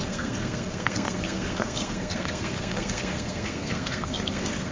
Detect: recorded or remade remade